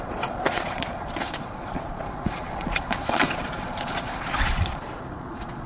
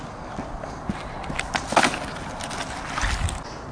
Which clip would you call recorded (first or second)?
second